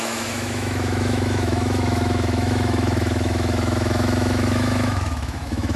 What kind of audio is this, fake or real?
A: fake